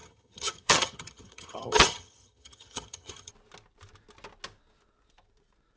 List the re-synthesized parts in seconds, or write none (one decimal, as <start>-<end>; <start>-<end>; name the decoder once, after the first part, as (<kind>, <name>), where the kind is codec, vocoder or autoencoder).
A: 0.0-3.3 (vocoder, HiFi-GAN)